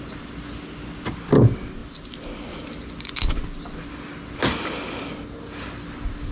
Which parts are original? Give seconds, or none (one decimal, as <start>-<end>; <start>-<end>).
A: 0.0-6.3